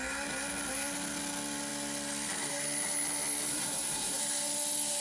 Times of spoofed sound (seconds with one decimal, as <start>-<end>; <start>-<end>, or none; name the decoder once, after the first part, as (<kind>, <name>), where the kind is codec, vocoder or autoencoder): 3.5-4.2 (codec, SNAC)

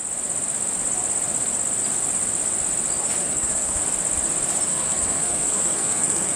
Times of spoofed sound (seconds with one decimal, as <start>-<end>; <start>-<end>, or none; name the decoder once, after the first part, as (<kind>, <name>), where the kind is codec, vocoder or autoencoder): 3.2-3.8 (codec, SNAC); 4.7-6.4

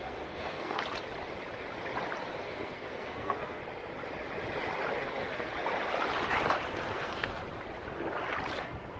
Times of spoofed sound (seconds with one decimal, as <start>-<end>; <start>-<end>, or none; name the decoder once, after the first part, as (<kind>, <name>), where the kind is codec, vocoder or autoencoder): 0.0-0.8 (codec, SNAC); 2.4-3.6; 5.0-5.5; 6.7-7.4; 8.6-9.0

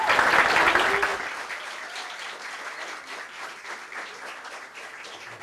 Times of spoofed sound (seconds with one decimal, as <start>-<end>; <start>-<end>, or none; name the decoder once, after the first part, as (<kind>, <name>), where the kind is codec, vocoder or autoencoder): none

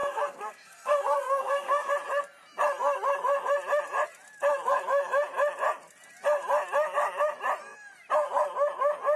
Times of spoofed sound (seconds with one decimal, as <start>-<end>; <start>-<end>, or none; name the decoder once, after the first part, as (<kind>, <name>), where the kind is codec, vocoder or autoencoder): 0.0-1.9 (codec, SNAC)